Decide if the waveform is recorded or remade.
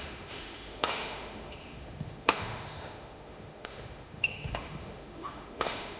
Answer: remade